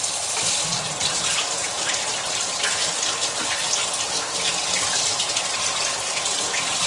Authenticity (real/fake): real